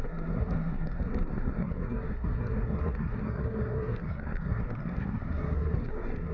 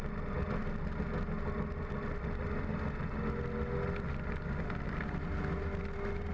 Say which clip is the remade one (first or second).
first